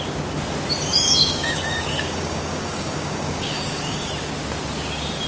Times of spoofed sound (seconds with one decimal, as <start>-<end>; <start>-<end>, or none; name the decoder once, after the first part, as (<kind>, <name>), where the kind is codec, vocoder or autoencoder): 0.9-4.1 (codec, DAC)